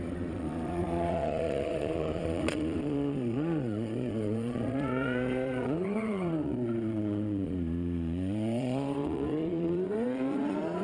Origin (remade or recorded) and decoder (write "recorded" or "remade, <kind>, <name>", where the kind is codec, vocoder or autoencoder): remade, vocoder, Vocos